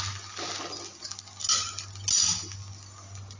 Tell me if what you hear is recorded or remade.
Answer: recorded